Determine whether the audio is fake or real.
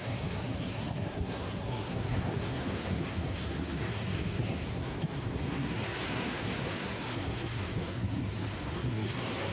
fake